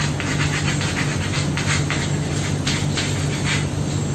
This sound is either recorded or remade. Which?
recorded